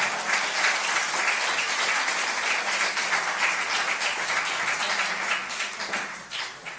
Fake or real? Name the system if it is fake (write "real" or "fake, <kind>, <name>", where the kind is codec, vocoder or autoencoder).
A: real